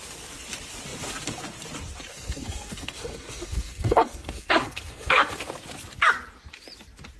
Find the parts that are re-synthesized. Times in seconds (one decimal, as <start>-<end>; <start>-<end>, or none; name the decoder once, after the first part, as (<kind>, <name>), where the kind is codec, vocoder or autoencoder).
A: 2.1-5.3 (codec, SNAC)